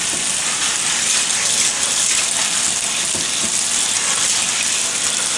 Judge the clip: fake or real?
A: real